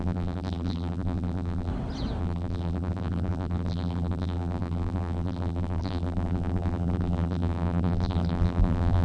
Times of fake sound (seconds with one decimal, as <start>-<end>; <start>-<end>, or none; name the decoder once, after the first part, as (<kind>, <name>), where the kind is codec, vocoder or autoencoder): 0.0-1.7 (vocoder, BigVGAN v2); 2.2-9.0